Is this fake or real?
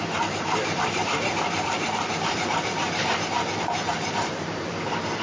fake